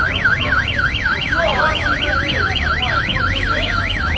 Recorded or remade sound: remade